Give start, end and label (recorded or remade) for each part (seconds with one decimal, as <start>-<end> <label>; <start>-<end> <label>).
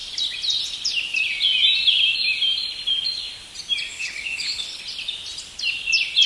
0.0-3.9 recorded; 3.9-4.8 remade; 4.8-6.3 recorded